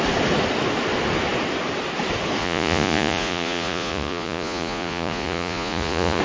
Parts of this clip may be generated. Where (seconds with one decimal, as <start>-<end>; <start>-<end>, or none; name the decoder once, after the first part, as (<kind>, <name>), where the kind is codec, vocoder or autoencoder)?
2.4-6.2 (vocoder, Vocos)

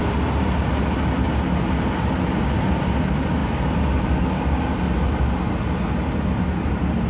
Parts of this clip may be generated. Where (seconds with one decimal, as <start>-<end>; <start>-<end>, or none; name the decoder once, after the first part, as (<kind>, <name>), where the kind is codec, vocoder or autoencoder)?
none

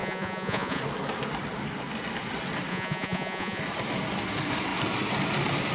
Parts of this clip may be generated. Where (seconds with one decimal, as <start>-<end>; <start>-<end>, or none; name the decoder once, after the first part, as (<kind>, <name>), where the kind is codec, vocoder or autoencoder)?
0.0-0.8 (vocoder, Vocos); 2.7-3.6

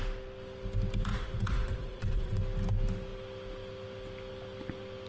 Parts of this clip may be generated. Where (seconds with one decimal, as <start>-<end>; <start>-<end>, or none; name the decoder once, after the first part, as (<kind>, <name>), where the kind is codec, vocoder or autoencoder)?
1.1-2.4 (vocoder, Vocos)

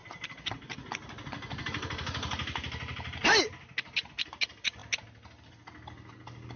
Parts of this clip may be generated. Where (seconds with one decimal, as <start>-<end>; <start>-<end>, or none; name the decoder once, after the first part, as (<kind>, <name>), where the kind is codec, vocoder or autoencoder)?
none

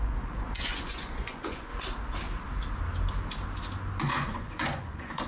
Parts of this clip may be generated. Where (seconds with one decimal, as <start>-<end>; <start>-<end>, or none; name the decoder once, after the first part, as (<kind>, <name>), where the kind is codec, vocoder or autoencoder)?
0.0-1.7 (vocoder, Vocos); 4.0-5.3